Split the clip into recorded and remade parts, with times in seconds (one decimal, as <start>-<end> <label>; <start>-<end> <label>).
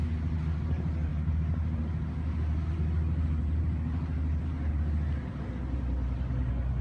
0.0-6.8 recorded